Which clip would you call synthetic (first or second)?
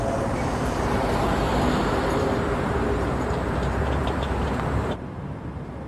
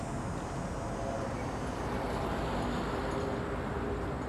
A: first